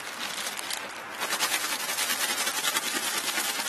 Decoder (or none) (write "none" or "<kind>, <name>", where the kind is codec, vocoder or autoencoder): none